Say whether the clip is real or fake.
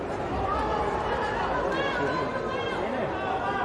real